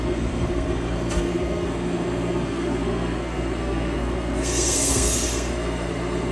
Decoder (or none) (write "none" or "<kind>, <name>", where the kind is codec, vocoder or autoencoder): codec, SNAC